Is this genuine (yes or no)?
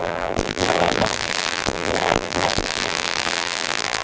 no